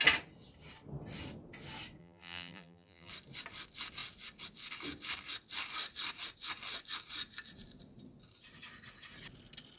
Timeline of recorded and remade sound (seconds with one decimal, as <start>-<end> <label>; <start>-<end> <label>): 0.0-2.0 recorded; 2.0-3.1 remade; 3.1-9.8 recorded